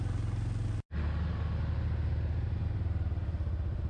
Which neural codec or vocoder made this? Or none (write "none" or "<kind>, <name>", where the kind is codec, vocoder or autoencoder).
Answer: none